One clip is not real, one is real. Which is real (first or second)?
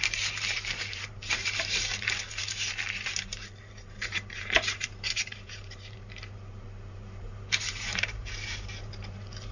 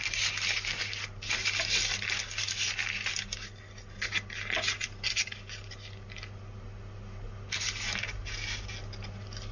second